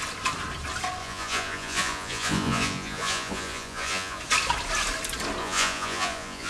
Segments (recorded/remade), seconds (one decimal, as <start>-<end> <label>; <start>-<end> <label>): 0.0-1.0 recorded; 1.0-4.2 remade; 4.2-5.4 recorded; 5.4-6.5 remade